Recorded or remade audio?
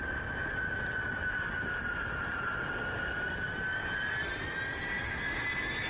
recorded